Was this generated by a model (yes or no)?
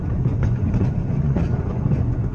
yes